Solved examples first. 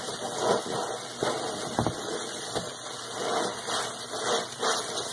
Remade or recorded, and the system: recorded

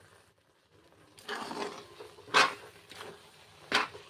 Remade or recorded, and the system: recorded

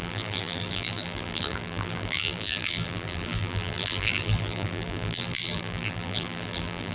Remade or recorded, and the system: remade, vocoder, BigVGAN v2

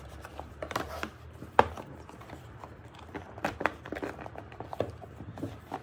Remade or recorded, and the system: remade, vocoder, BigVGAN v2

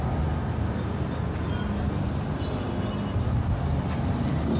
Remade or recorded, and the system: recorded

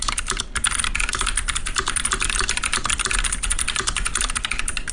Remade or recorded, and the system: recorded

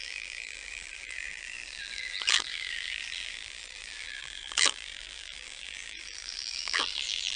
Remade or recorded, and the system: remade, vocoder, BigVGAN v2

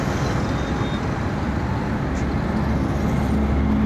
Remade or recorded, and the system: recorded